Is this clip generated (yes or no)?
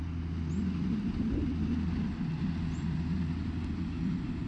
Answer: no